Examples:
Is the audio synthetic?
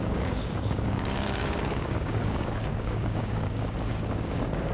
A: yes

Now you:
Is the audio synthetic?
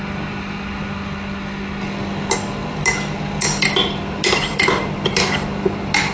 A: no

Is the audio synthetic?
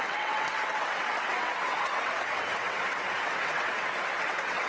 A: yes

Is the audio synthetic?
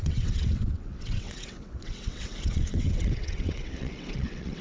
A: yes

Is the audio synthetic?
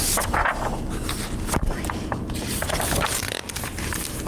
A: no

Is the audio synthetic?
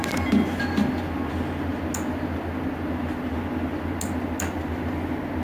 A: no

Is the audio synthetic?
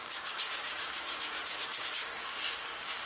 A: yes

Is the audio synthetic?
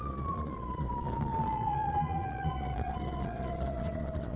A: yes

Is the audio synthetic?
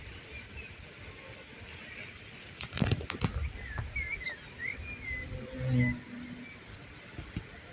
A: no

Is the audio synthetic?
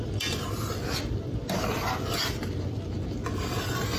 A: no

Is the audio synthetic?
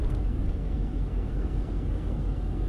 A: yes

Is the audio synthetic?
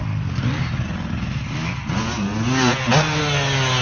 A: no